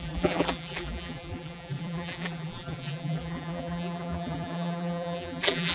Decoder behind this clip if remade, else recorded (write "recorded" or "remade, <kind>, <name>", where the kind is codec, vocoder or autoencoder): remade, vocoder, BigVGAN v2